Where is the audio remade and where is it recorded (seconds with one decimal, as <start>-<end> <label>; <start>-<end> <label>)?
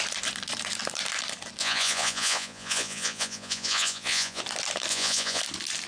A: 0.0-1.6 recorded; 1.6-4.4 remade; 4.4-4.9 recorded; 4.9-5.4 remade; 5.4-5.9 recorded